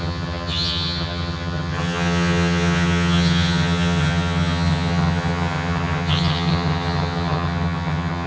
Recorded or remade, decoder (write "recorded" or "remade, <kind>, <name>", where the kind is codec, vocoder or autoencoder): remade, vocoder, HiFi-GAN